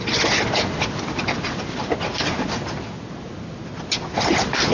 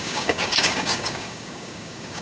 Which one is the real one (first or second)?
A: first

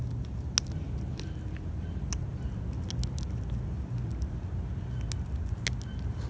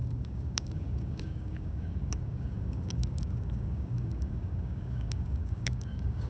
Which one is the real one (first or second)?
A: first